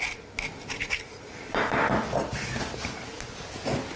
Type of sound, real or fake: real